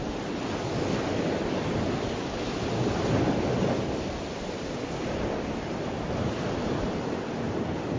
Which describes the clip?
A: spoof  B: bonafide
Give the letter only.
B